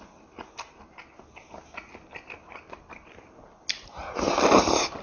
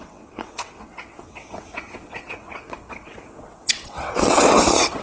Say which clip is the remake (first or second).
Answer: second